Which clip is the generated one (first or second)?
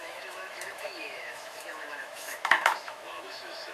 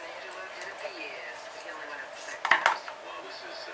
first